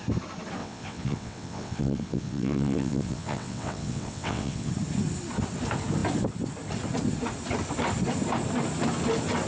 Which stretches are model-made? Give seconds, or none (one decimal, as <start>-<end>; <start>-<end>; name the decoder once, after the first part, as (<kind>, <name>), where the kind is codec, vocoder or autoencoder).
0.6-4.7 (vocoder, WaveNeXt)